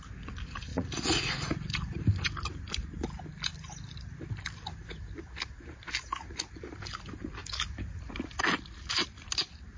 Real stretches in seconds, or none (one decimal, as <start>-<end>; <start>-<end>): 0.0-0.7; 2.0-9.8